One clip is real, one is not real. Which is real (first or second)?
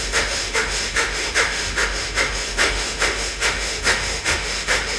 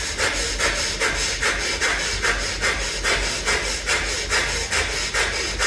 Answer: second